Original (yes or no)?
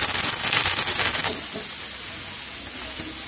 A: yes